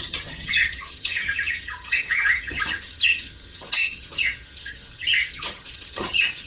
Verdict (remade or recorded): remade